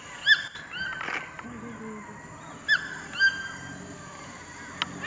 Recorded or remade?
recorded